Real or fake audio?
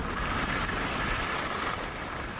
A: real